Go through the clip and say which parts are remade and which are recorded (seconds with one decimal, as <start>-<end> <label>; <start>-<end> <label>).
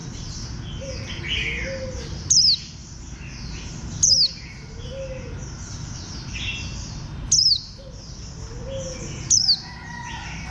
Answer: 0.0-10.5 recorded